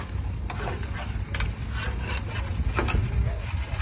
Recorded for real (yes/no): yes